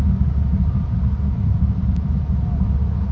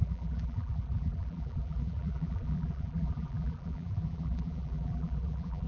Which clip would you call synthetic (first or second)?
second